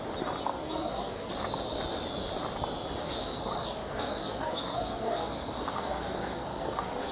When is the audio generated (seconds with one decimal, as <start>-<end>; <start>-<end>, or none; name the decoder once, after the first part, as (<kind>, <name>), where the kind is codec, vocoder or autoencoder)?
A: 0.5-1.3 (codec, SNAC); 3.0-7.1

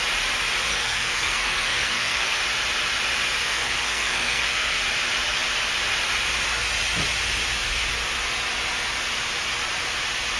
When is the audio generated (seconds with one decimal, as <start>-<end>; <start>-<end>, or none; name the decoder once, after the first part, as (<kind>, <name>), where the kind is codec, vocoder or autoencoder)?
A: 0.7-2.4 (codec, SNAC); 3.4-4.8

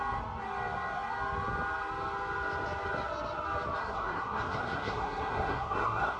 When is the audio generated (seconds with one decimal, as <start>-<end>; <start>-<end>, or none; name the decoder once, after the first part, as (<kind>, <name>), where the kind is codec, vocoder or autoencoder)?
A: 3.8-6.2 (codec, SNAC)

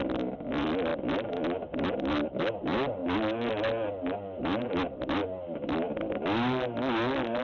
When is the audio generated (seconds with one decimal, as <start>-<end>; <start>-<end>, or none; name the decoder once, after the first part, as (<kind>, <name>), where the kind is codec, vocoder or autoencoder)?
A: none

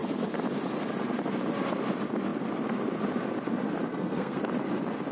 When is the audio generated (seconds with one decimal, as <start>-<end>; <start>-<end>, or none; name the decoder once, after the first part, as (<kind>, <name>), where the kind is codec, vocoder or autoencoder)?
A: 3.9-4.4 (codec, SNAC)

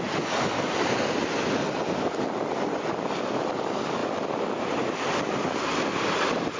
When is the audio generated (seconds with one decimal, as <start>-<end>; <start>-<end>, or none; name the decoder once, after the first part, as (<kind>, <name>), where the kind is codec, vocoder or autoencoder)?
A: none

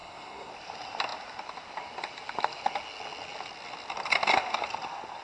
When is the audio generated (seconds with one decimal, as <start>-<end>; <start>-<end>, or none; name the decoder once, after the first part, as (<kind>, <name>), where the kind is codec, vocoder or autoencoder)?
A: 0.0-0.5 (codec, SNAC)